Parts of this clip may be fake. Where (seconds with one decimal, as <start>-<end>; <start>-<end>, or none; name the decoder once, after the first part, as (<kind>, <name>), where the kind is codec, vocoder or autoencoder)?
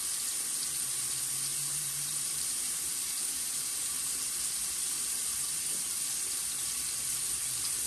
1.5-3.9 (vocoder, BigVGAN v2); 4.6-5.8